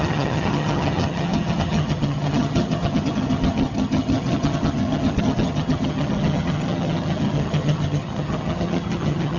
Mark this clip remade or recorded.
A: remade